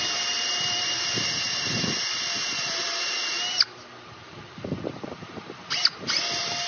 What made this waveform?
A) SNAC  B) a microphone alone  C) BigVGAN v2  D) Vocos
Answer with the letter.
C